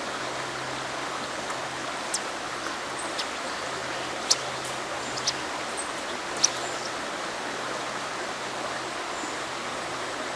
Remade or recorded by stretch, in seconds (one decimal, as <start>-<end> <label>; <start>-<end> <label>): 0.0-10.4 recorded